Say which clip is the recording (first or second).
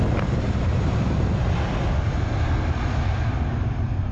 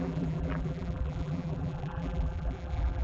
first